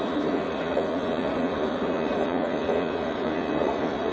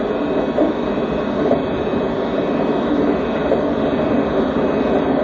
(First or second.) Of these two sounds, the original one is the second